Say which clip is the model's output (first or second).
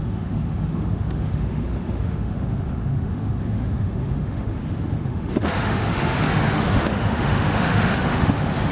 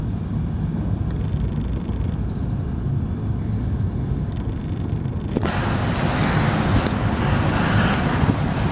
first